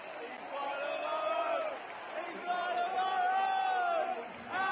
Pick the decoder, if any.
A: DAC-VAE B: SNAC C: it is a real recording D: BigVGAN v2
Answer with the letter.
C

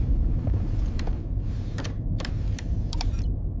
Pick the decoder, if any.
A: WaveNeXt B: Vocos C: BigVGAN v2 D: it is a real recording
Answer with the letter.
C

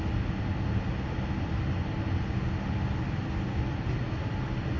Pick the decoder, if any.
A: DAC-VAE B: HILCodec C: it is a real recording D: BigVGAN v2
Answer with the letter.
C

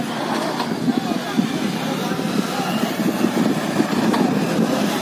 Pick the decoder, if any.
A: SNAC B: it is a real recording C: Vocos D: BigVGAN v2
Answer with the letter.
B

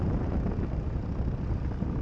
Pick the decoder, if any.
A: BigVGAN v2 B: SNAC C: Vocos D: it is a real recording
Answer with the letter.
D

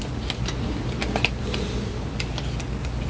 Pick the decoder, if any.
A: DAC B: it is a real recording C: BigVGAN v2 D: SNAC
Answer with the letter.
B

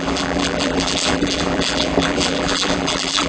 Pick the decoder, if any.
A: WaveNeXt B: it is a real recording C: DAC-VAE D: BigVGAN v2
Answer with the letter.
D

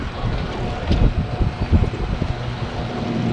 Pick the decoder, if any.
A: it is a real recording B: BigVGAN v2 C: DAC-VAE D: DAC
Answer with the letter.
A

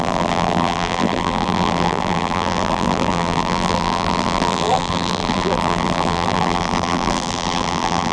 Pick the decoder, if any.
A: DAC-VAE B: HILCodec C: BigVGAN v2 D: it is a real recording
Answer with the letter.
C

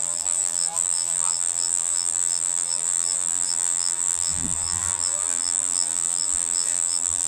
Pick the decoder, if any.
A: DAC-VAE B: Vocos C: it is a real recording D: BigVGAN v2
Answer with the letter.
D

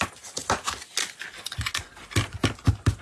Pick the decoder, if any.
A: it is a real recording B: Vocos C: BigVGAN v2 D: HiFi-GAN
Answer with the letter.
A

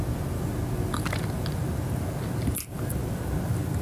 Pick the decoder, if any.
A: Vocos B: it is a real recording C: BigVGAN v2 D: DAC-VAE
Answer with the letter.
B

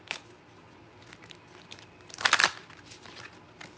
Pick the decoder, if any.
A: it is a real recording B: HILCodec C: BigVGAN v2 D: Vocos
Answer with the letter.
A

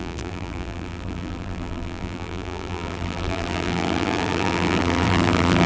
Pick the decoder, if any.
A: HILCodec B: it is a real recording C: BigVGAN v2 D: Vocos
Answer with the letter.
C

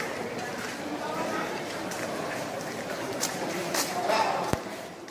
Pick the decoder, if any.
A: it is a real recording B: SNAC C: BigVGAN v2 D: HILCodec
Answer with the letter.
C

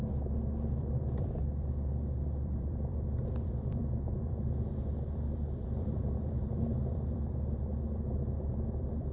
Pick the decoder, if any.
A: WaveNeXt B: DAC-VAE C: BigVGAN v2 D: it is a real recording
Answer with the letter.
C